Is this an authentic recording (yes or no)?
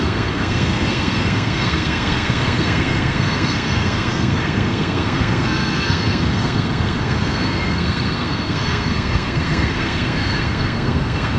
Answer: no